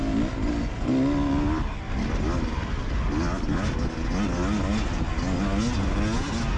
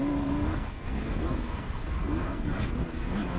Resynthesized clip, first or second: second